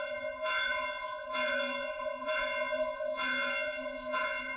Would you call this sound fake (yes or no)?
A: yes